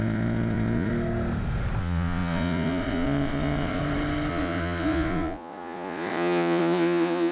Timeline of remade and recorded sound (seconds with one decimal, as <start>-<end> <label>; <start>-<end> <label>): 0.0-0.9 remade; 0.9-1.8 recorded; 1.8-3.8 remade; 3.8-4.3 recorded; 4.3-7.3 remade